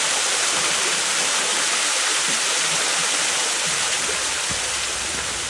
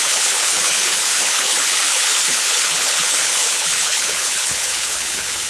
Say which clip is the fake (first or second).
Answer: second